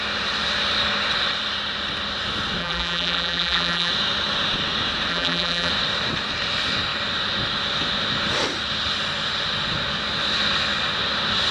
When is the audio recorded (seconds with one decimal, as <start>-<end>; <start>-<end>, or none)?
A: 0.0-2.6; 3.9-5.1; 5.7-11.5